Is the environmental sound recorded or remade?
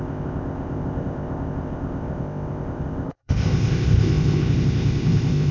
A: remade